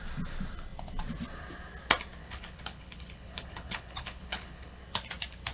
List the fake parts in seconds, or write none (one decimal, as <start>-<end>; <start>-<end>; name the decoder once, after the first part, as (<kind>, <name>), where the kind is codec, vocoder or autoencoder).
2.2-4.8 (codec, HILCodec)